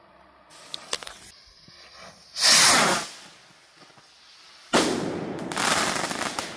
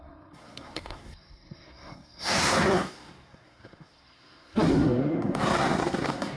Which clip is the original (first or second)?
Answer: first